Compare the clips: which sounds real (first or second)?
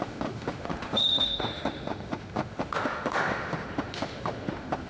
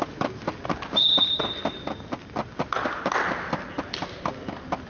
second